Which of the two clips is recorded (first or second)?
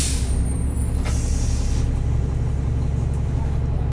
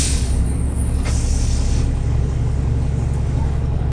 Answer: first